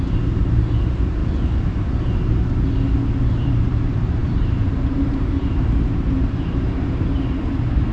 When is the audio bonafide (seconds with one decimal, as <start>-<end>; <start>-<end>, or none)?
1.2-3.2